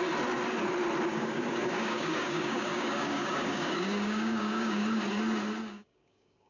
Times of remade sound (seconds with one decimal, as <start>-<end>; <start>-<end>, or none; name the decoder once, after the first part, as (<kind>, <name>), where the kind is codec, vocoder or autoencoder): 1.1-5.0 (codec, DAC); 5.6-6.5